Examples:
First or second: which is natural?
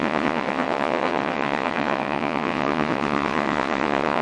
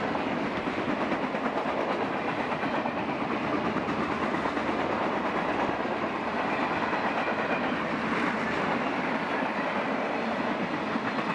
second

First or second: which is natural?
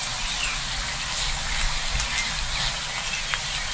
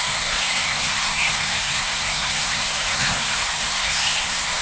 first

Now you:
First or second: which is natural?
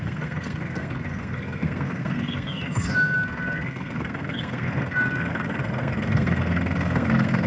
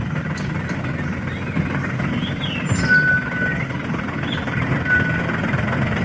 second